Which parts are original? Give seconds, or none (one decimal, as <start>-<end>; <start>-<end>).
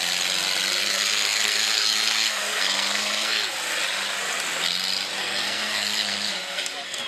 0.0-0.8; 3.5-5.2